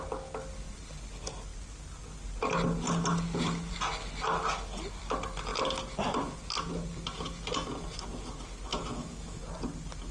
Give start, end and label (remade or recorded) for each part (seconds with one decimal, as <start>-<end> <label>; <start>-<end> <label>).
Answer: 0.0-8.7 recorded; 8.7-9.4 remade; 9.4-10.1 recorded